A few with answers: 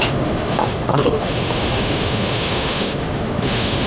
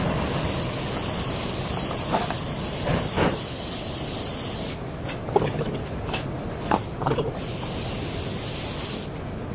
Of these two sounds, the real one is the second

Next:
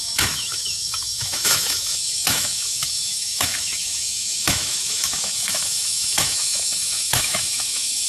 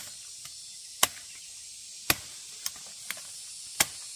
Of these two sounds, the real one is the second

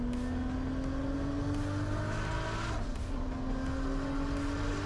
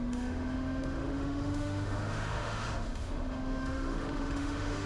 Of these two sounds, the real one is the first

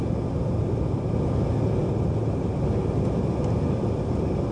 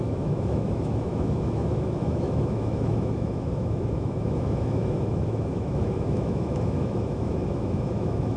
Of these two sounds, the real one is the first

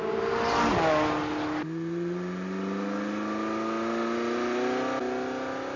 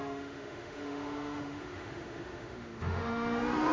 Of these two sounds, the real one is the first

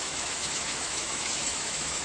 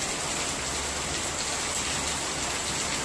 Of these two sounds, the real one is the second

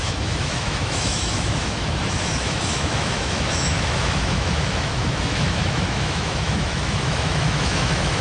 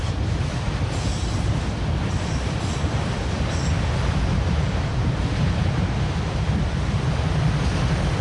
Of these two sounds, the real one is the second